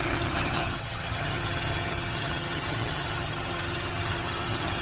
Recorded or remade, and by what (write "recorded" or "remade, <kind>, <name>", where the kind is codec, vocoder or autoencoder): remade, vocoder, HiFi-GAN